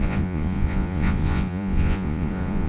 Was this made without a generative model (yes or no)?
no